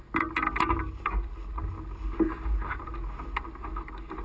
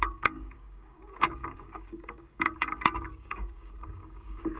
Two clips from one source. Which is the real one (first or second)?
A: first